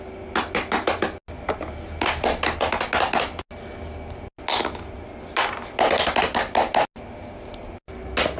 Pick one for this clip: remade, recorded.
recorded